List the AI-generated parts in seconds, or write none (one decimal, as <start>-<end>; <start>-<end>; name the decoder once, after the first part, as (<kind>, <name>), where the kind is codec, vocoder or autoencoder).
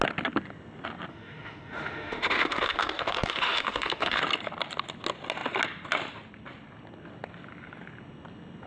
1.1-4.2 (autoencoder, DAC-VAE)